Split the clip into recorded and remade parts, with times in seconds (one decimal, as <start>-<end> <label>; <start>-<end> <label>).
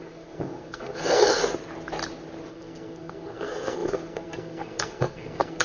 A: 0.0-1.4 remade; 1.4-2.5 recorded; 2.5-5.6 remade